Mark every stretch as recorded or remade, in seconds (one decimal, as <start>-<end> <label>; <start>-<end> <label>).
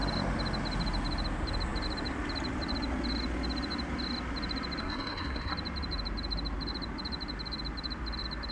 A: 0.0-4.8 recorded; 4.8-5.5 remade; 5.5-8.5 recorded